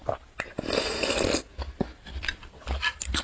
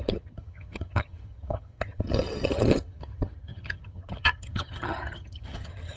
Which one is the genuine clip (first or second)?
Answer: first